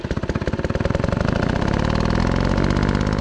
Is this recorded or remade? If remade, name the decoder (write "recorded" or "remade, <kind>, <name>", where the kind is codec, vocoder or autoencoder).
recorded